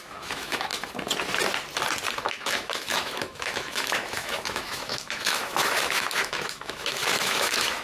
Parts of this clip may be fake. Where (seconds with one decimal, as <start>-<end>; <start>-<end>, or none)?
0.0-0.7; 2.2-7.8